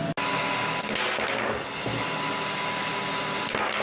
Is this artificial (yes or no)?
no